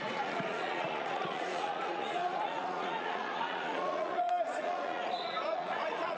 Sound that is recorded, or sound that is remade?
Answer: remade